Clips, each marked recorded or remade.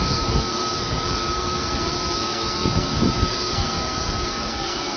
remade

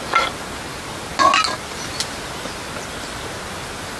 recorded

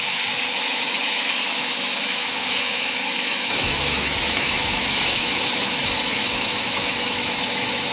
remade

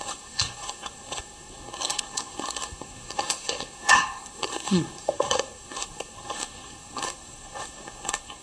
remade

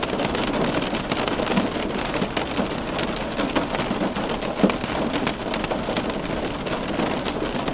recorded